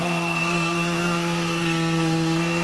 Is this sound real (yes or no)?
no